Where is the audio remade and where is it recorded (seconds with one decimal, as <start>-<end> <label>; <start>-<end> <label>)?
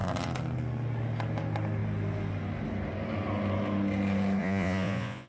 0.0-4.4 recorded; 4.4-5.3 remade